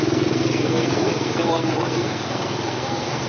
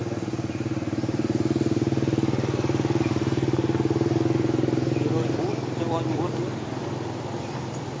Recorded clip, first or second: second